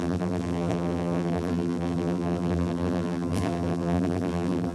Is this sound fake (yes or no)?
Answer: yes